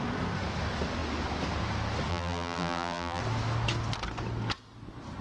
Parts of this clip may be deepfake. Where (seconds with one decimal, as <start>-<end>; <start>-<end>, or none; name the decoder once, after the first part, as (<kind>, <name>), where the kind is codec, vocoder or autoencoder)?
2.1-3.2 (vocoder, BigVGAN v2)